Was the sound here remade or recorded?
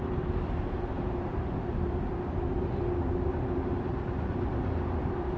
recorded